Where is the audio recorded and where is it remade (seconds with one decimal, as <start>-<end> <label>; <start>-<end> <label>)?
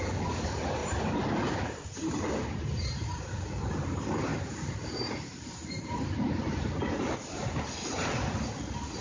0.0-0.8 remade; 0.8-1.5 recorded; 1.5-7.7 remade; 7.7-9.0 recorded